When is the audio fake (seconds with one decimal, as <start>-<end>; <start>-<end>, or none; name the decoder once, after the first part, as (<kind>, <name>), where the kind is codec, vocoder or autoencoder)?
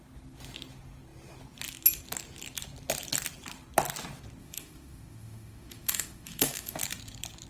4.4-6.8 (autoencoder, DAC-VAE)